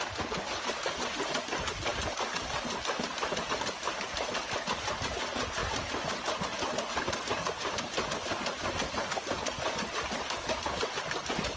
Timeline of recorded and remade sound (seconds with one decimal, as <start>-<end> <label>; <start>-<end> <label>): 0.0-11.6 recorded